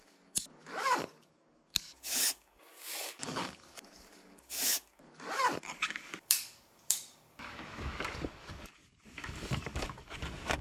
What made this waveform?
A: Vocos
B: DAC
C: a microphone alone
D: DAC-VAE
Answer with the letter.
B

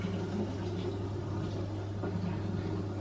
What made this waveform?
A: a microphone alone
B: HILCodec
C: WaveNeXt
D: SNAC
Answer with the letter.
A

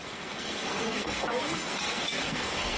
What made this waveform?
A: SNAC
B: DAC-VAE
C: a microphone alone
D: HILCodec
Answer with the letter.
A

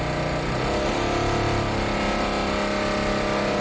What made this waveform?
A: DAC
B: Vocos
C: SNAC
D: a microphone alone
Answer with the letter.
D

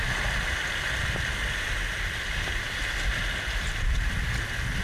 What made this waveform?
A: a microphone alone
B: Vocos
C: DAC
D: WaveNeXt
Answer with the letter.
A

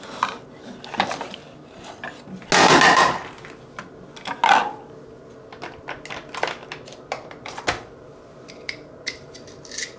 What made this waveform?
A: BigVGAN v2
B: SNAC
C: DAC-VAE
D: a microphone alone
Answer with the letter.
D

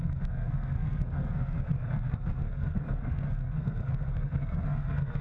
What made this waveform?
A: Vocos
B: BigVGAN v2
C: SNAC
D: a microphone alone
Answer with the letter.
C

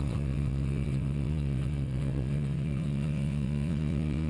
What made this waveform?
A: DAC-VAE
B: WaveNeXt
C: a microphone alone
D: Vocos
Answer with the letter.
B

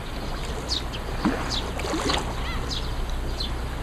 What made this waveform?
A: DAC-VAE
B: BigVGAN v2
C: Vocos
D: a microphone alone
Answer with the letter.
D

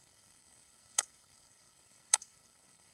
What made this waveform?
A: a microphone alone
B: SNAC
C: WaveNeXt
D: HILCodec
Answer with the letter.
B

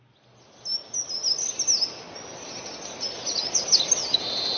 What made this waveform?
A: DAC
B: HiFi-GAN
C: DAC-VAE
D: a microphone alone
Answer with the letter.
D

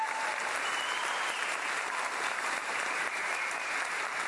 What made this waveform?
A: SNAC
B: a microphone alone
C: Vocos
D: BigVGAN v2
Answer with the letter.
D